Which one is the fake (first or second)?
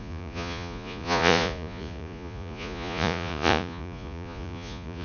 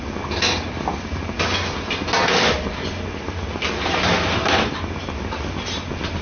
first